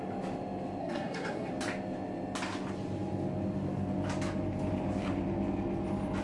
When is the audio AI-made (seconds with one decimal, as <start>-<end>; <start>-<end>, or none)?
0.8-1.5